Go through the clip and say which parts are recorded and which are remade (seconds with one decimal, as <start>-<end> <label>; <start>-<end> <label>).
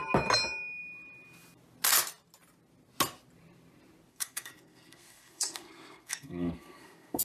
0.0-4.1 recorded; 4.1-7.2 remade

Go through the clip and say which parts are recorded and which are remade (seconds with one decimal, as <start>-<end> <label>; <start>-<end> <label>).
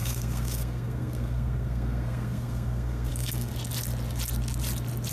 0.0-3.5 remade; 3.5-5.1 recorded